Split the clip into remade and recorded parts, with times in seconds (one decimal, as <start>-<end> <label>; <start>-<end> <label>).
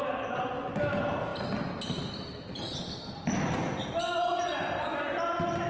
0.0-5.7 recorded